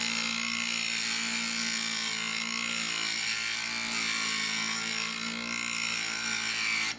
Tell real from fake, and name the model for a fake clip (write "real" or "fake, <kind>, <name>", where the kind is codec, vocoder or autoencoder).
real